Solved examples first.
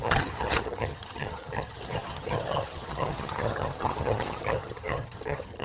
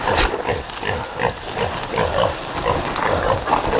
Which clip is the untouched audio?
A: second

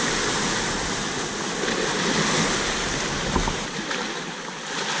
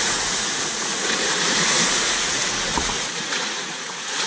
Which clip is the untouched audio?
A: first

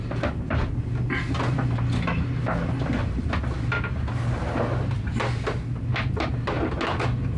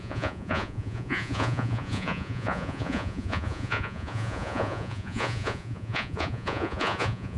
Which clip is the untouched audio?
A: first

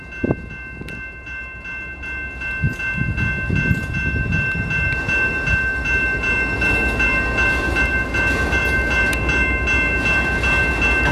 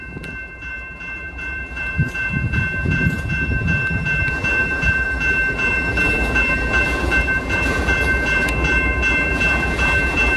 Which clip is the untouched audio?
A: first